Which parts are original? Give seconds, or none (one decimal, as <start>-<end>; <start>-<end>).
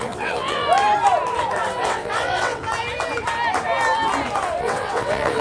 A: 0.6-1.8; 2.6-4.6